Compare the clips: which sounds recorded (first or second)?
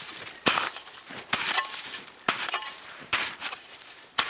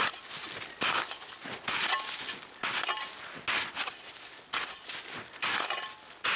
second